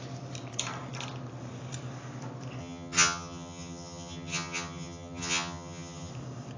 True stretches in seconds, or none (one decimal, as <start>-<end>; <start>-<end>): 0.0-2.6; 6.1-6.6